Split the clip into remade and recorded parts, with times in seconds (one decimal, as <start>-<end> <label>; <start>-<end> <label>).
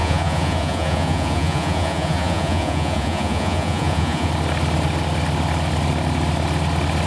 0.0-4.3 remade; 4.3-7.1 recorded